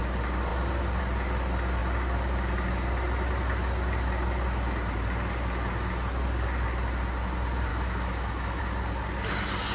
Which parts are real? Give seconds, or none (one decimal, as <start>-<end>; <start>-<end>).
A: 0.0-7.7; 8.6-9.7